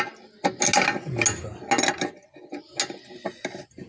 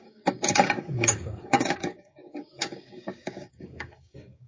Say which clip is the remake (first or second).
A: second